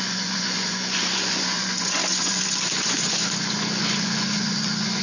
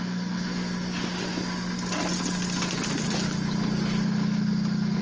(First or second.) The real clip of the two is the second